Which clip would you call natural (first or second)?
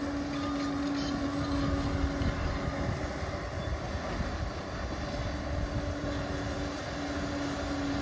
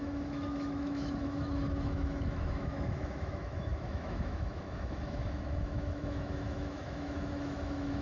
first